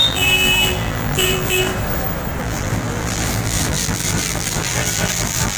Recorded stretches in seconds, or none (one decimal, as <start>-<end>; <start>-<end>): 1.7-2.4